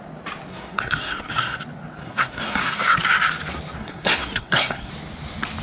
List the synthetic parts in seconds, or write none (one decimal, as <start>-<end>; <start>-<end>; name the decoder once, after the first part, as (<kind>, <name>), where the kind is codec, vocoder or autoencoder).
0.5-1.6 (codec, SNAC); 2.0-3.0; 3.8-4.9